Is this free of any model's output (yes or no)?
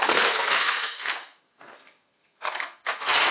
no